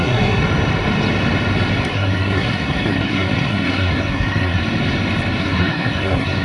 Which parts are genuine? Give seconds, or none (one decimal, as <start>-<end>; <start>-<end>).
0.4-1.9; 4.6-5.4